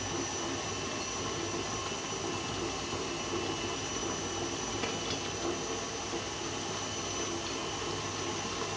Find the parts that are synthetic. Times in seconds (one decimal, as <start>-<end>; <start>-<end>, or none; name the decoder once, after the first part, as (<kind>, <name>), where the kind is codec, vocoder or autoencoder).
none